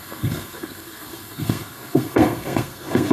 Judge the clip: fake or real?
fake